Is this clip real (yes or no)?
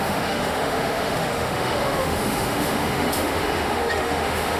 no